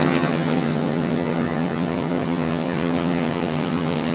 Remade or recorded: remade